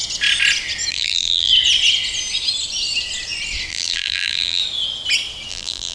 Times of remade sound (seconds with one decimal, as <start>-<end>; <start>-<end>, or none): 0.9-1.5; 3.7-4.6; 5.5-5.9